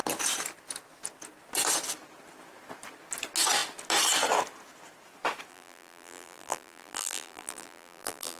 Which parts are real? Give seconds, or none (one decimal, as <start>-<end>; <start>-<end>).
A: 0.0-5.5